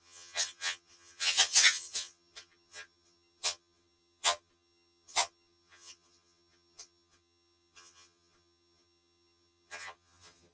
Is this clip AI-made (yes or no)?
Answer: yes